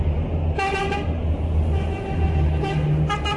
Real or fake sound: real